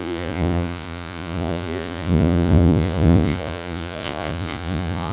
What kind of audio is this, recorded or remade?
remade